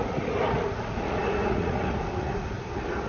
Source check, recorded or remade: remade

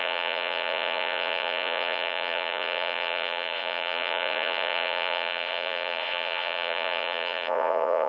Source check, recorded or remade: remade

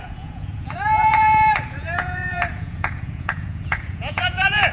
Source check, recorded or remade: remade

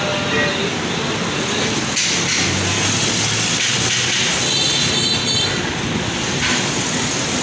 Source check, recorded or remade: recorded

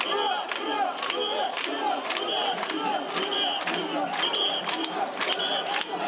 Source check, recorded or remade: recorded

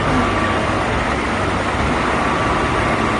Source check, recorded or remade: recorded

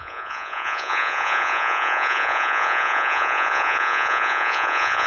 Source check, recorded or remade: remade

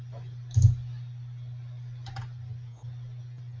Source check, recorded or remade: recorded